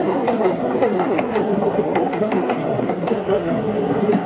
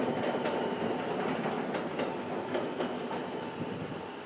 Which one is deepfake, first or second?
first